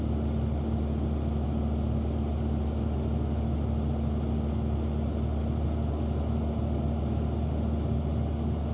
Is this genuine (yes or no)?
yes